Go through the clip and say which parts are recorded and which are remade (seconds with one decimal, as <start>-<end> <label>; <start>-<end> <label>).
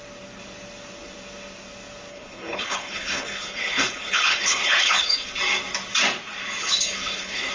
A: 0.0-2.1 recorded; 2.1-5.3 remade; 5.3-6.6 recorded; 6.6-7.5 remade